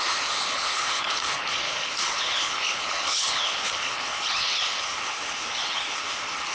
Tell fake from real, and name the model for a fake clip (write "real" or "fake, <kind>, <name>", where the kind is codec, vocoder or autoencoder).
fake, codec, HILCodec